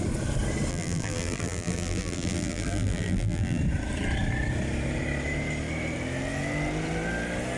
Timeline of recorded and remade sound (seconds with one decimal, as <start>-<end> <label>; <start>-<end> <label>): 0.0-0.7 recorded; 0.7-3.6 remade; 3.6-7.6 recorded